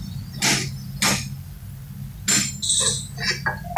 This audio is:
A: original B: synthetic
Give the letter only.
A